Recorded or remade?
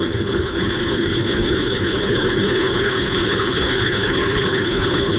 remade